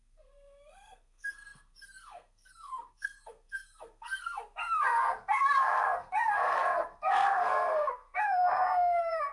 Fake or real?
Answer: fake